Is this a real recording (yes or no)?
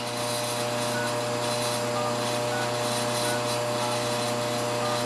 yes